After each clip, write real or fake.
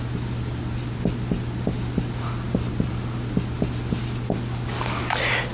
real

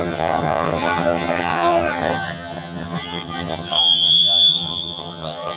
fake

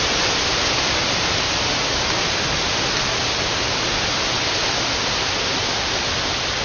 real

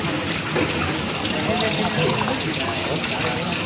real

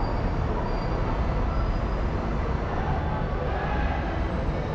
real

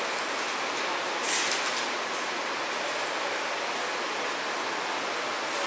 real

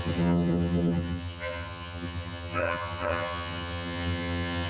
fake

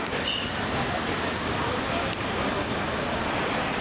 real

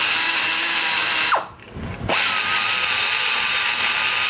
real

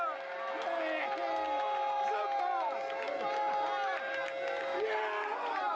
real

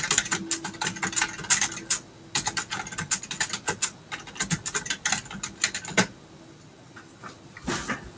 real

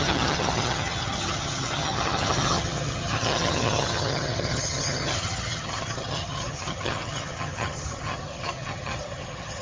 fake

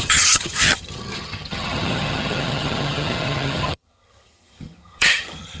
fake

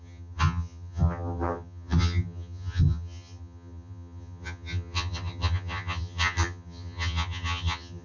fake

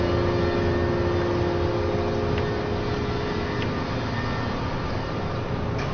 real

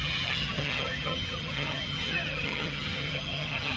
fake